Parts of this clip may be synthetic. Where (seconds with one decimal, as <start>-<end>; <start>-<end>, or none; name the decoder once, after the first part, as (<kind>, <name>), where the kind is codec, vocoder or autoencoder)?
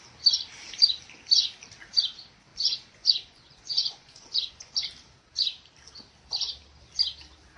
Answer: 2.5-4.7 (vocoder, Vocos)